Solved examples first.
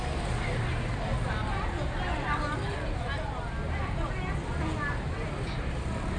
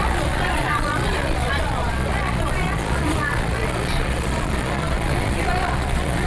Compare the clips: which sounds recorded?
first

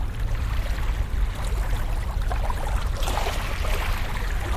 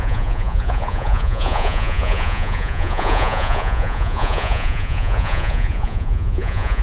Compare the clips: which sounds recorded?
first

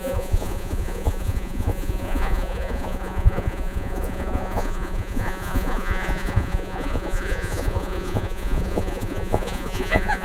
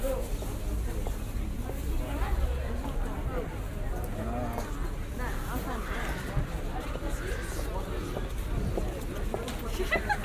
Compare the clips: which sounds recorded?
second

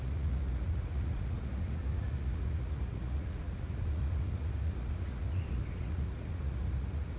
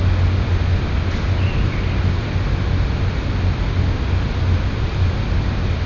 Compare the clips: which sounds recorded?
second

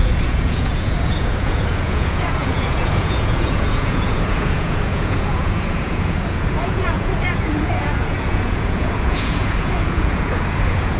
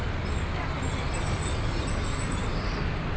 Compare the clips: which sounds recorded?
second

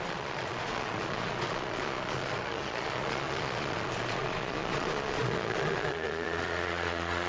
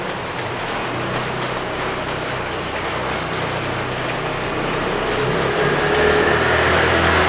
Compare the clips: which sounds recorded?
second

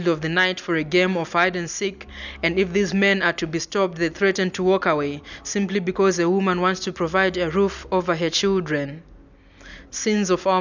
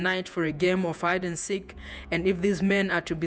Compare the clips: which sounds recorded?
first